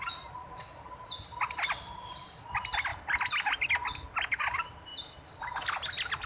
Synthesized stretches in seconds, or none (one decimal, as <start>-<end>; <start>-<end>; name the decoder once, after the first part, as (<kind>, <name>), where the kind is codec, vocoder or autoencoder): none